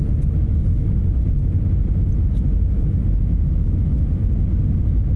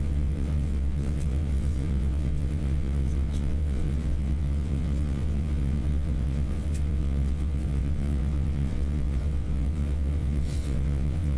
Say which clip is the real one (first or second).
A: first